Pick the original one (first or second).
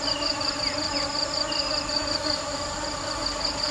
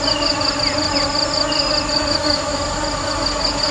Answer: second